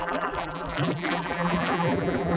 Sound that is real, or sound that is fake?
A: fake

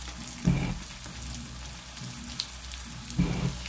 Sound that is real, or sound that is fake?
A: real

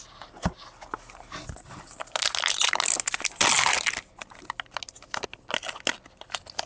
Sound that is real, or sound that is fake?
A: real